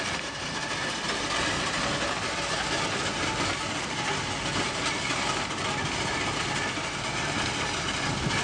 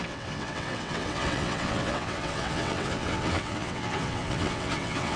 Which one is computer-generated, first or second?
second